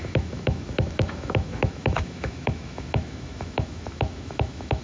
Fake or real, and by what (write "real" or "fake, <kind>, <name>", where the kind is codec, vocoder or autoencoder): fake, autoencoder, DAC-VAE